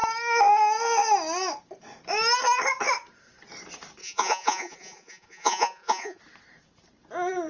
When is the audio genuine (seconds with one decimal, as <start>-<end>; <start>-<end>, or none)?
0.0-4.0; 6.2-7.5